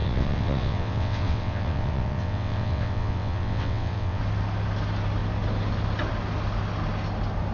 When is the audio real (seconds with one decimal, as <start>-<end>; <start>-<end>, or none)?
4.2-7.5